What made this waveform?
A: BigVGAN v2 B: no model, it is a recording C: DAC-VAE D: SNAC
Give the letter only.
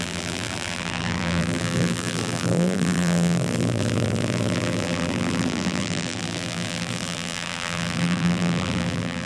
A